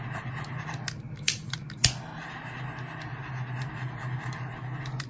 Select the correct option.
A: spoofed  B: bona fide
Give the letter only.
B